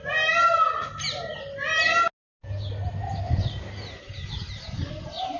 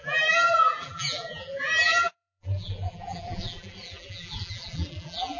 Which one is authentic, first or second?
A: first